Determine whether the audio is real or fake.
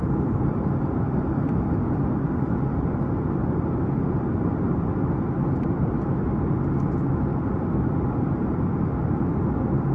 real